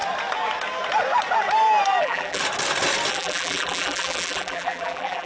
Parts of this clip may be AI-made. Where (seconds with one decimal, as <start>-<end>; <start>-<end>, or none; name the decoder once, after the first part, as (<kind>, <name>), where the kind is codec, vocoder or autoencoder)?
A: 2.0-2.4 (vocoder, BigVGAN v2); 3.1-5.3